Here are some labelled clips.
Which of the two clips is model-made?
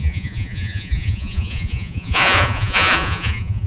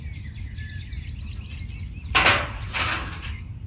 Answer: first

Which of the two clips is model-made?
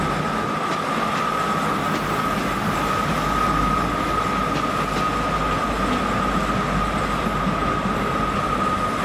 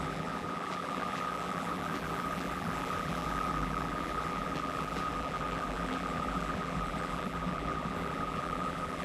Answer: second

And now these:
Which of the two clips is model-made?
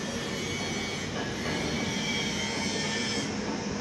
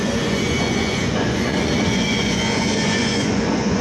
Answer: second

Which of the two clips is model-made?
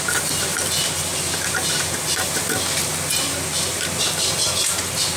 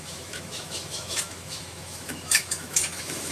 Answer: second